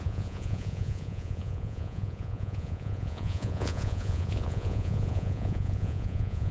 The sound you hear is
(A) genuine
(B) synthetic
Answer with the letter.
B